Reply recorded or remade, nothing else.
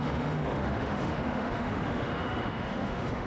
remade